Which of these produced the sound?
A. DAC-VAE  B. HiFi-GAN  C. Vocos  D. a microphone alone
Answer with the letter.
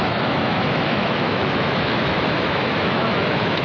A